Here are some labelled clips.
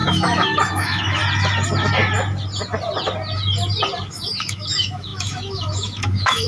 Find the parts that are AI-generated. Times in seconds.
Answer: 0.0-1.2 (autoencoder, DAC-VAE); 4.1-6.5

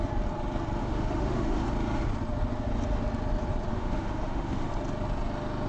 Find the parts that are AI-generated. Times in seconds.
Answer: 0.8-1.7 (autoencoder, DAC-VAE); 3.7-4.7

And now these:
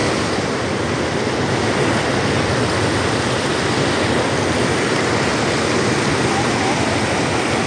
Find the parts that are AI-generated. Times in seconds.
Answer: none

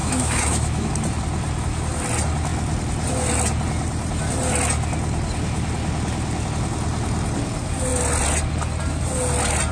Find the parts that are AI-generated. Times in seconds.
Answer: 0.0-0.9 (autoencoder, DAC-VAE)

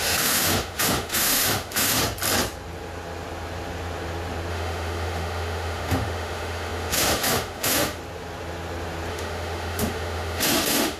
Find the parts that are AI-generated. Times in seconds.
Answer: 0.0-2.0 (autoencoder, DAC-VAE); 4.5-8.0; 9.1-11.0

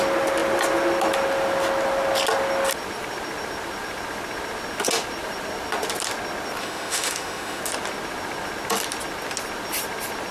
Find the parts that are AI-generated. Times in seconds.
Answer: 6.6-7.6 (autoencoder, DAC-VAE)

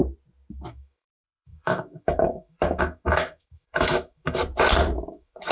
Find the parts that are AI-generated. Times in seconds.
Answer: 0.5-4.4 (autoencoder, DAC-VAE); 5.1-5.5